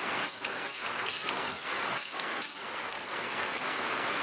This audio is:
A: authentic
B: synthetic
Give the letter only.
B